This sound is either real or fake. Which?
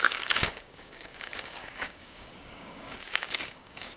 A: fake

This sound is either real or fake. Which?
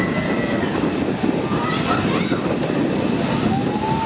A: real